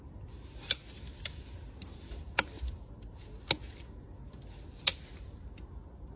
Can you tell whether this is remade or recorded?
recorded